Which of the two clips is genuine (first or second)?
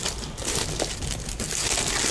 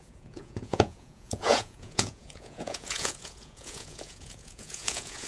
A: first